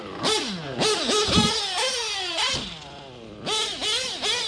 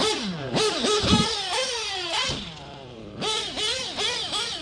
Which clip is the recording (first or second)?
first